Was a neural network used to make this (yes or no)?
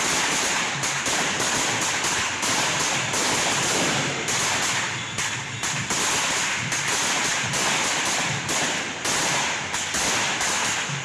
no